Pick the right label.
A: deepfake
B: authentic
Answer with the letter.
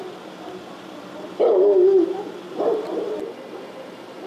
B